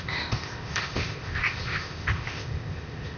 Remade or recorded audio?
remade